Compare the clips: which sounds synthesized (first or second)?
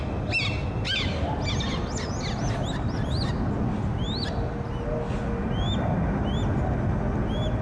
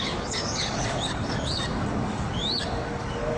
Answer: second